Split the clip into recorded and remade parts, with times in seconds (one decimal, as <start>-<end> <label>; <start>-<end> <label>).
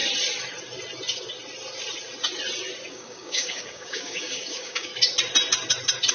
0.0-2.9 recorded; 2.9-4.9 remade; 4.9-6.1 recorded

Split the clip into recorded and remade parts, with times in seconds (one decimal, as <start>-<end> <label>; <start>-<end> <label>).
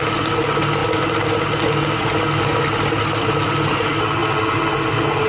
0.0-5.3 recorded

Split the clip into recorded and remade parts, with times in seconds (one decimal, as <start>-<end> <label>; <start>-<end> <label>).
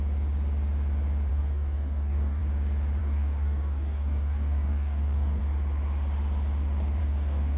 0.0-1.3 recorded; 1.3-2.4 remade; 2.4-3.0 recorded; 3.0-5.4 remade; 5.4-7.0 recorded; 7.0-7.6 remade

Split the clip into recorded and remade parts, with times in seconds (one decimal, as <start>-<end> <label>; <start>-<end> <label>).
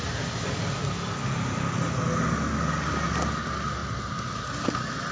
0.0-5.1 recorded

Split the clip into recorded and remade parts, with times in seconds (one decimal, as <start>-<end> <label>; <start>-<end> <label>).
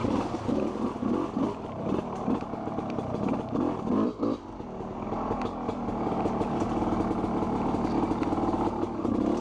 0.0-0.6 remade; 0.6-9.4 recorded